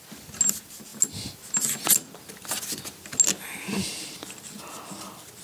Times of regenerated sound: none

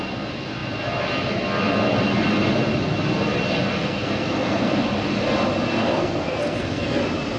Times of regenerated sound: 3.8-4.7 (codec, SNAC); 5.8-7.0

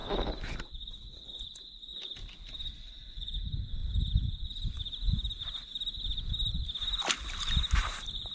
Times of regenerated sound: none

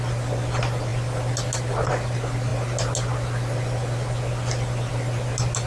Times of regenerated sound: none

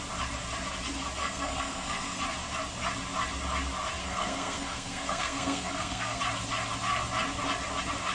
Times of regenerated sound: 1.2-2.2 (codec, SNAC); 4.0-6.2

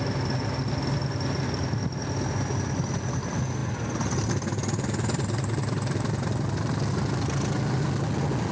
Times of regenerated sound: none